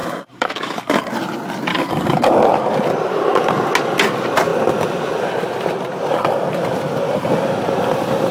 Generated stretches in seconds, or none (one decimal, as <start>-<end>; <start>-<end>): 0.0-1.1; 1.7-2.3